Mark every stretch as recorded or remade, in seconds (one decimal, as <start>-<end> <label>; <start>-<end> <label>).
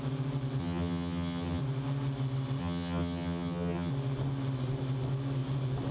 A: 0.0-0.6 recorded; 0.6-1.6 remade; 1.6-2.6 recorded; 2.6-3.9 remade; 3.9-5.9 recorded